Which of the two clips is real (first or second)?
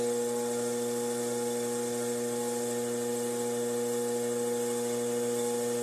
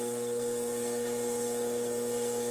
first